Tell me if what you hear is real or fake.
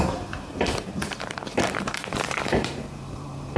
fake